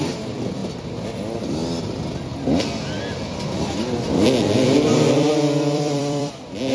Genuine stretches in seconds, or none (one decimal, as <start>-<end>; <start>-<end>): 0.0-2.3; 6.3-6.7

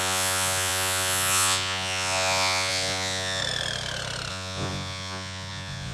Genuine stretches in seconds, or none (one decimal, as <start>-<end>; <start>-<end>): 3.4-4.3

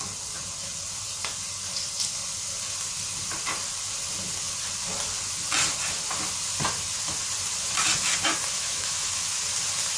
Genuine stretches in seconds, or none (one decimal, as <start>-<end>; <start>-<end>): 0.0-8.5; 9.2-10.0

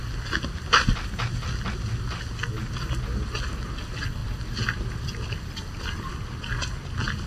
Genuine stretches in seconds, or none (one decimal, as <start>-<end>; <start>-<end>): 0.0-4.2; 5.4-7.3